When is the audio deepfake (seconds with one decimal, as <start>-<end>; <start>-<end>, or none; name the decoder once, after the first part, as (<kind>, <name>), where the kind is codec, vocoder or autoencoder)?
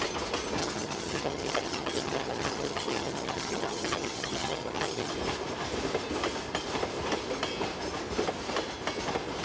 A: 0.6-5.1 (vocoder, HiFi-GAN)